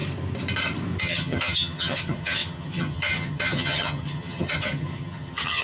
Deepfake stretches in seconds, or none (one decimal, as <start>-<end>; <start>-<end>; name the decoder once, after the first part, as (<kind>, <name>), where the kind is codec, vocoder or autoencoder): 1.0-5.6 (vocoder, HiFi-GAN)